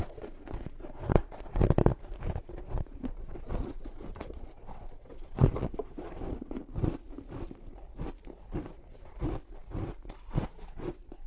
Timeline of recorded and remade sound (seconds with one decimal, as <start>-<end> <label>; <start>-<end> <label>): 0.0-1.6 remade; 1.6-2.3 recorded; 2.3-6.6 remade; 6.6-10.3 recorded; 10.3-11.3 remade